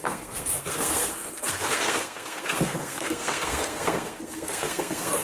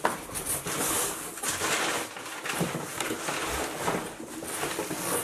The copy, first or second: first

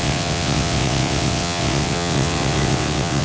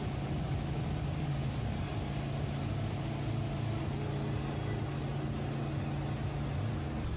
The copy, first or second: first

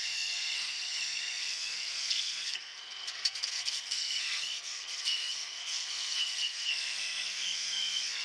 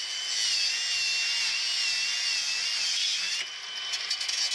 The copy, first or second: first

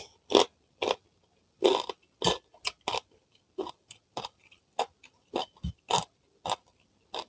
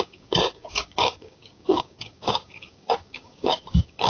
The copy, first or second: second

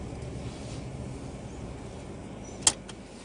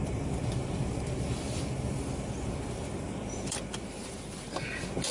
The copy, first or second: second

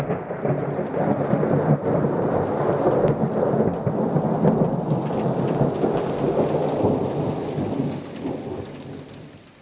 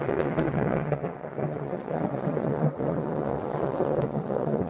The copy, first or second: second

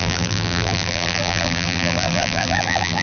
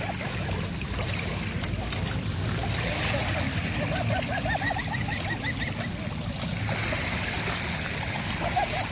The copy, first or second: first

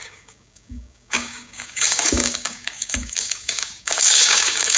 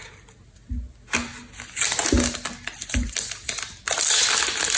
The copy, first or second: first